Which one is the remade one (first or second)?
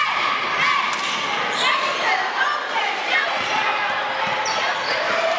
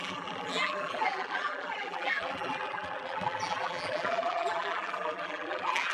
second